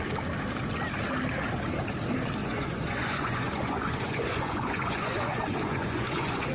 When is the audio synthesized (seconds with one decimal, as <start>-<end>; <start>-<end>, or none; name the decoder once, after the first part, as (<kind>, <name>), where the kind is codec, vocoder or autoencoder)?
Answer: 2.4-6.5 (vocoder, Vocos)